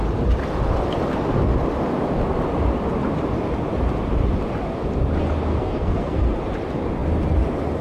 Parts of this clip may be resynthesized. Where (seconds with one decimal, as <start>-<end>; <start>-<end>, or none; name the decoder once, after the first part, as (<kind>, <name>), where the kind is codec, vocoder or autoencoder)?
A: 5.5-6.4 (codec, SNAC)